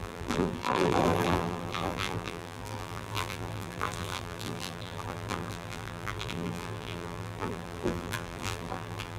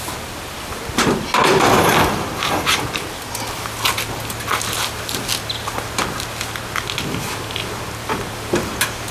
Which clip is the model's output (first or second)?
first